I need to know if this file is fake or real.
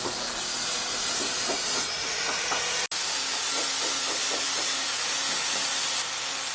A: real